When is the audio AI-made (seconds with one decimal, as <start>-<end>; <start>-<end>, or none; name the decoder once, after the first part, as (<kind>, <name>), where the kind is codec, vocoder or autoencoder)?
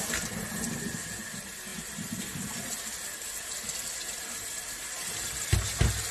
none